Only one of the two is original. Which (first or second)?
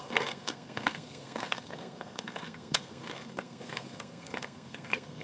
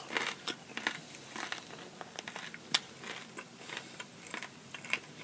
second